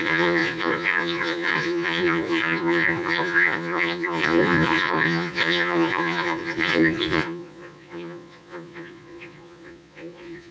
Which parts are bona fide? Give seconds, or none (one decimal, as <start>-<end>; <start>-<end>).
none